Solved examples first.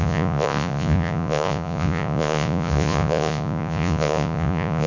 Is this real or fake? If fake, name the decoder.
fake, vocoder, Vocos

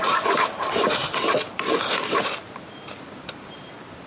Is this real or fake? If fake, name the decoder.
fake, vocoder, BigVGAN v2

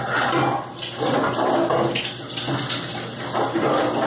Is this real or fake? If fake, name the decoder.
real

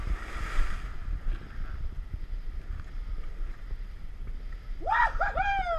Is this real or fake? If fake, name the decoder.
real